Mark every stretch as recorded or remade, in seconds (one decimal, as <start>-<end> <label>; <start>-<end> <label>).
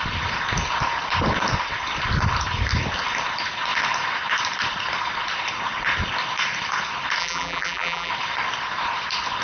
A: 0.0-7.2 recorded; 7.2-8.1 remade; 8.1-9.4 recorded